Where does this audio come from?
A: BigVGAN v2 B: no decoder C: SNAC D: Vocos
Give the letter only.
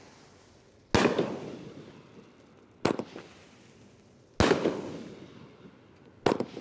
B